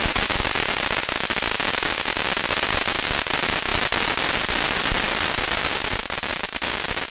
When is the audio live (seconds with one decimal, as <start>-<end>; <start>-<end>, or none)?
0.0-7.1